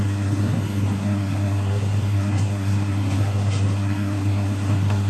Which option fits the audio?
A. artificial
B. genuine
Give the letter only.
A